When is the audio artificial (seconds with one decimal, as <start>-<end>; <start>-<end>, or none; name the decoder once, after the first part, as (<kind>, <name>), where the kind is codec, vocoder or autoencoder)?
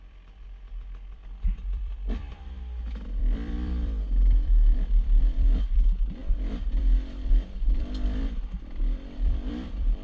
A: 0.0-10.0 (vocoder, BigVGAN v2)